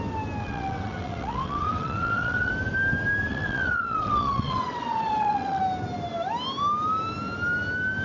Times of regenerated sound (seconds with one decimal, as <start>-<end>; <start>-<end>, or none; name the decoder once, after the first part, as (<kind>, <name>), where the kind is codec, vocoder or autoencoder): 0.4-2.5 (vocoder, WaveNeXt); 3.3-5.6